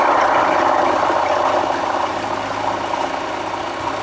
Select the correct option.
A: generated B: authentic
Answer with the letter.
B